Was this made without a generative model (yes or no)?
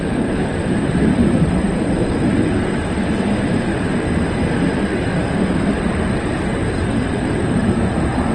no